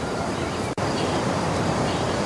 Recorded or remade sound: remade